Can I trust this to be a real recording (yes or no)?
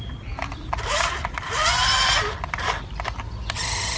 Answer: yes